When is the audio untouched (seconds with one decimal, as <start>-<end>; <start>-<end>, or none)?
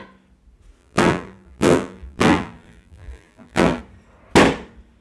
0.0-0.8; 3.8-5.0